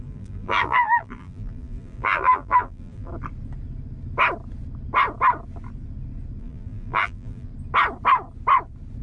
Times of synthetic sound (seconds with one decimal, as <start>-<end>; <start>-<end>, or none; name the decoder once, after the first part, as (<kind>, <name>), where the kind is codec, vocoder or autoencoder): 0.0-3.1 (vocoder, BigVGAN v2); 6.4-7.5